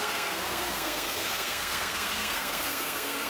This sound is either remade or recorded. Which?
remade